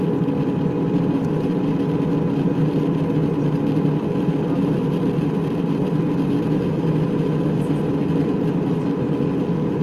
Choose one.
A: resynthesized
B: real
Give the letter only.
B